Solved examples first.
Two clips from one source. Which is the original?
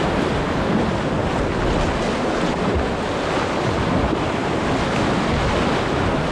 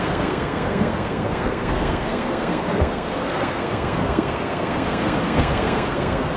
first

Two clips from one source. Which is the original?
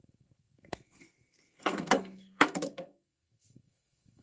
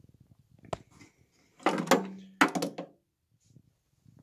second